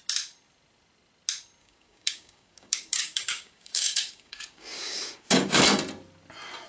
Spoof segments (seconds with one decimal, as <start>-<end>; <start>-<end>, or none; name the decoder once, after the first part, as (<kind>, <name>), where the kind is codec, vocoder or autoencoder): 1.6-5.6 (codec, DAC)